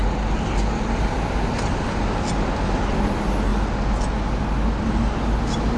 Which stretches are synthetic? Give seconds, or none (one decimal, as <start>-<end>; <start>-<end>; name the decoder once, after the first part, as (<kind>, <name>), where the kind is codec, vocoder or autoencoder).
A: none